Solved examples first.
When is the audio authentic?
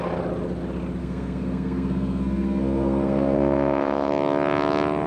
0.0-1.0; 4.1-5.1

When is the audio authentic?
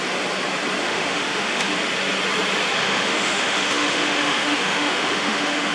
0.0-0.8; 1.7-2.8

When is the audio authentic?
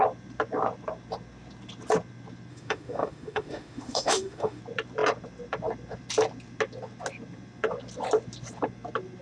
0.0-2.5; 4.6-9.2